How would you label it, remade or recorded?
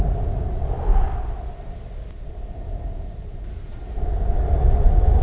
recorded